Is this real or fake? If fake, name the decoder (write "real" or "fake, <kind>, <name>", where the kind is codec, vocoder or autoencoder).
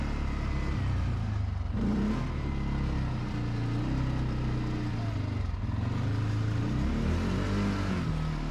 real